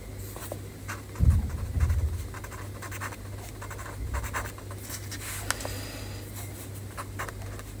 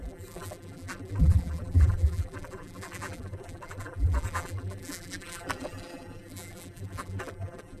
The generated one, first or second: second